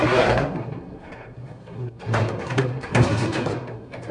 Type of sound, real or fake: fake